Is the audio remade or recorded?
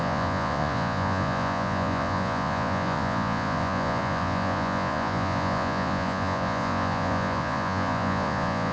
remade